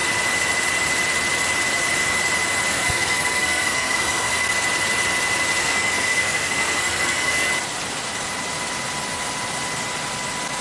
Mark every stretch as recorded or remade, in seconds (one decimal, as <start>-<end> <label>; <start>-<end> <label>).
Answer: 0.0-2.7 recorded; 2.7-4.5 remade; 4.5-5.6 recorded; 5.6-7.5 remade; 7.5-10.6 recorded